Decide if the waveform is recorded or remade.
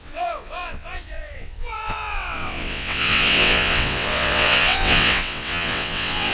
remade